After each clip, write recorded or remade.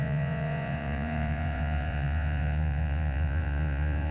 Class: remade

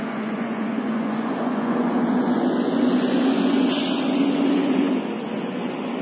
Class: remade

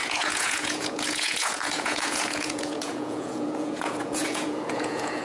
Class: remade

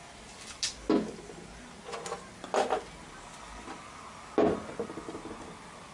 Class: recorded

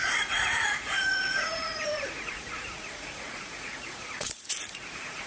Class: remade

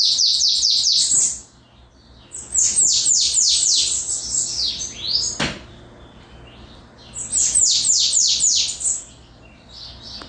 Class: recorded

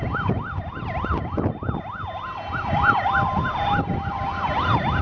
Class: recorded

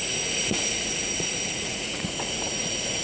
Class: remade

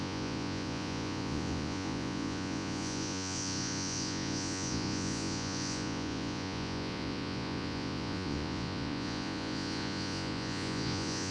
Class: remade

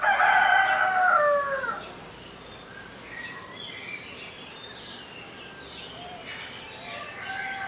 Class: recorded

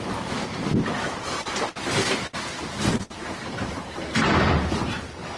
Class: recorded